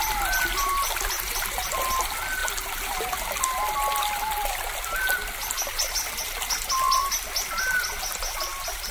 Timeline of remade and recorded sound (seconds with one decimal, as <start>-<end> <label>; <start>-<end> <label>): 0.0-8.9 recorded